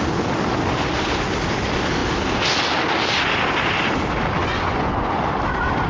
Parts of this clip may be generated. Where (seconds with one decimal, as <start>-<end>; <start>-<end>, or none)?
4.4-5.2